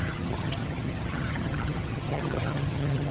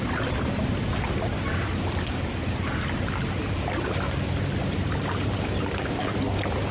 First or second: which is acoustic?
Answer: second